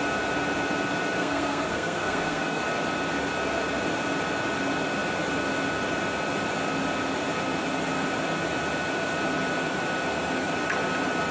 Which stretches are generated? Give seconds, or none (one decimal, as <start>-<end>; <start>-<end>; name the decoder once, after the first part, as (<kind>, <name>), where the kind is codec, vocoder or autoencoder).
1.2-2.6 (codec, SNAC)